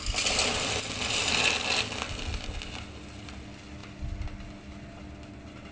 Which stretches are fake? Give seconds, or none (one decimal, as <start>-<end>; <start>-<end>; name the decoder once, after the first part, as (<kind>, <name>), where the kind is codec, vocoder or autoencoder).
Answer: none